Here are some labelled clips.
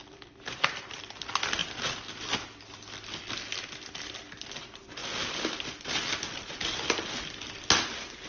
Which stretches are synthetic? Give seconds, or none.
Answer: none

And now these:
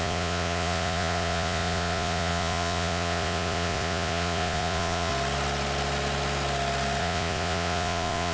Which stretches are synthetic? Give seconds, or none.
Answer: 0.0-5.1 (vocoder, Vocos); 7.0-8.3

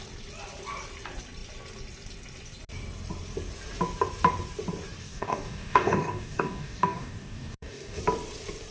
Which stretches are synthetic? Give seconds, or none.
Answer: 5.0-8.0 (codec, DAC)

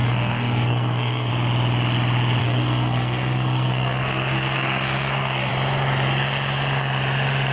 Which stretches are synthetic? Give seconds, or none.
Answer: 0.0-1.3 (codec, SNAC); 2.4-5.5

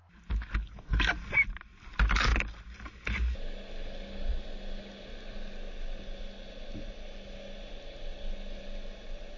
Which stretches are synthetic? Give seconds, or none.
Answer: none

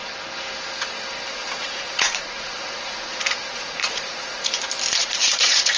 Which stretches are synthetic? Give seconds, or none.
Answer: 1.3-4.6 (vocoder, Vocos); 5.0-5.8

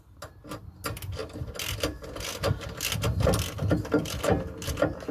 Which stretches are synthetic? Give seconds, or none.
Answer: none